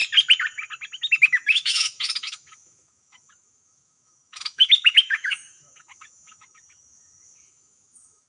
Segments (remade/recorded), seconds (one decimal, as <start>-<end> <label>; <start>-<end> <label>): 0.0-1.1 recorded; 1.1-8.3 remade